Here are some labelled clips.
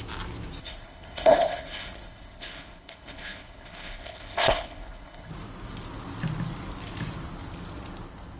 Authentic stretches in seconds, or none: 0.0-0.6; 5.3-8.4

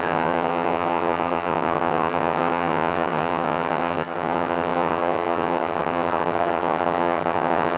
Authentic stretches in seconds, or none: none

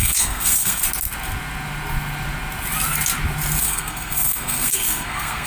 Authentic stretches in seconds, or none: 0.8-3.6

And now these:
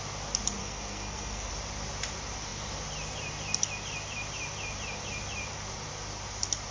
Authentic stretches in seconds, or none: 0.0-0.6; 1.5-6.7

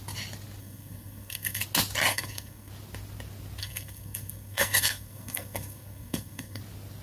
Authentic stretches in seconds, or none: 0.0-0.6; 1.6-2.1; 2.7-3.6; 6.6-7.0